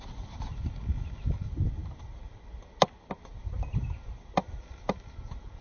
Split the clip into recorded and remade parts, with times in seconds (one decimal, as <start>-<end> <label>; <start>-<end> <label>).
0.0-5.6 recorded